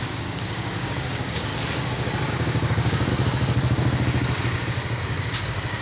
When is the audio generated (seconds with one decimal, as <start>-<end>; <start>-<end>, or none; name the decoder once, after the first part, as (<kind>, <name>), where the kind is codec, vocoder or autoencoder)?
0.0-1.5 (codec, DAC); 2.3-3.1; 5.0-5.8